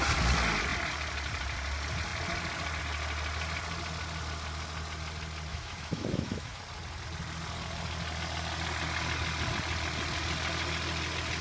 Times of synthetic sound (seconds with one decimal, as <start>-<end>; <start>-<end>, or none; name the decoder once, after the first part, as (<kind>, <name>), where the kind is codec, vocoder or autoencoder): 5.5-6.6 (autoencoder, DAC-VAE)